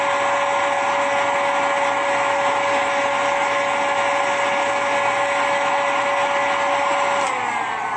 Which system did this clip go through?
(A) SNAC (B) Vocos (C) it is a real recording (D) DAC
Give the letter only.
C